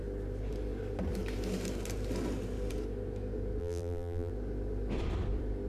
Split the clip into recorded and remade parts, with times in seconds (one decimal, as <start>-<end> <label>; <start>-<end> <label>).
0.0-3.6 recorded; 3.6-4.3 remade; 4.3-5.7 recorded